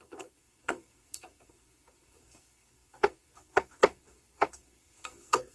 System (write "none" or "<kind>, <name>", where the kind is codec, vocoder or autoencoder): codec, SNAC